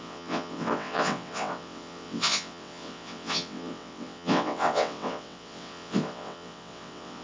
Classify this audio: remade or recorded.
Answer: remade